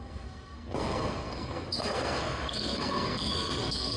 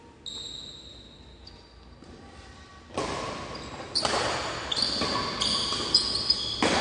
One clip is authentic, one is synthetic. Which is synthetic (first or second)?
first